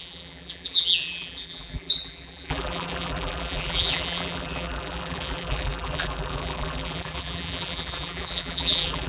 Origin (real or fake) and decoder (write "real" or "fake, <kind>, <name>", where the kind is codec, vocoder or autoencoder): fake, vocoder, BigVGAN v2